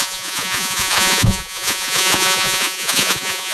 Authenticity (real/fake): fake